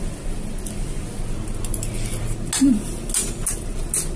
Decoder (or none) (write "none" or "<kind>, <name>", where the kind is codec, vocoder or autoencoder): none